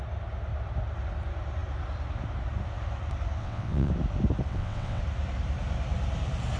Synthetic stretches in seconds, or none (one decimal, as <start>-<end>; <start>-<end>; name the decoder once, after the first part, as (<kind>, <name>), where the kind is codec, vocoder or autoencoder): 3.4-3.9 (vocoder, WaveNeXt); 4.5-5.0